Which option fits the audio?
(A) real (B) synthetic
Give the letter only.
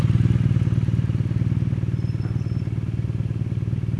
A